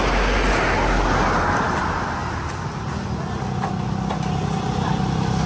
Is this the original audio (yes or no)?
yes